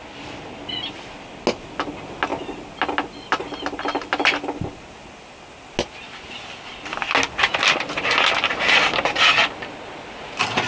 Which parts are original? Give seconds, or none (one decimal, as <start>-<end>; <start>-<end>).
0.0-10.7